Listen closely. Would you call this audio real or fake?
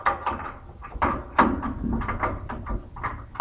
fake